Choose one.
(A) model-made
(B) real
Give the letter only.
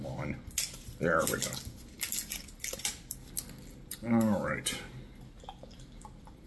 B